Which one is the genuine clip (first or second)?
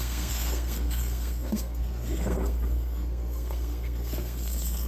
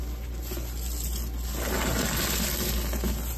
second